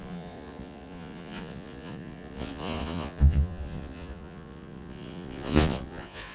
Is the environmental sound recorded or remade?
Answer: remade